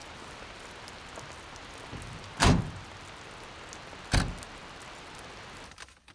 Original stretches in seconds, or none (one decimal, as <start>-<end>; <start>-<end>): 0.0-6.1